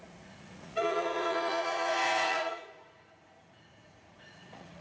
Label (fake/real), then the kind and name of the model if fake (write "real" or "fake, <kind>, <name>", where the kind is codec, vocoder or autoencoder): fake, vocoder, Vocos